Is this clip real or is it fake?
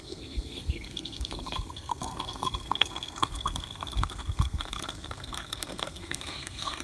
fake